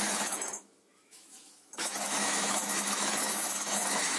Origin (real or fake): fake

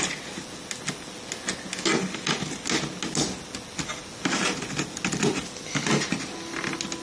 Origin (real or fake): real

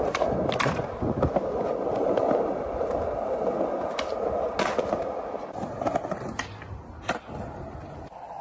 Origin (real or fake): real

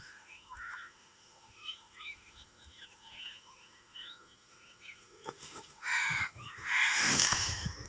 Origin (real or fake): fake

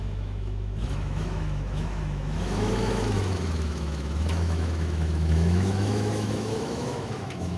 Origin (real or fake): fake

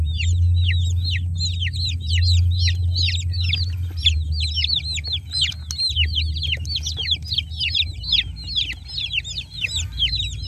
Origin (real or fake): real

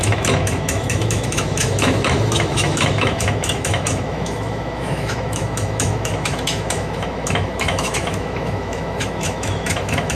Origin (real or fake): fake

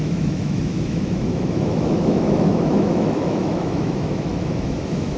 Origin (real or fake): fake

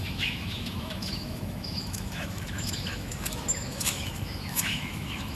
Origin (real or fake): fake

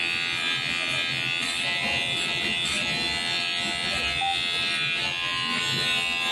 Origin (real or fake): real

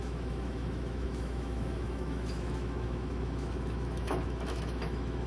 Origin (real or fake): fake